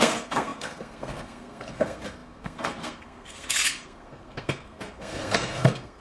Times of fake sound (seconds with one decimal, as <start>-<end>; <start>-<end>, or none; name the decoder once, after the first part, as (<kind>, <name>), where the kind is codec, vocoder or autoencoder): 0.0-6.0 (codec, SNAC)